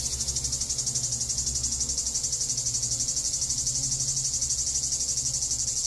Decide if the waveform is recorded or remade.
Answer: recorded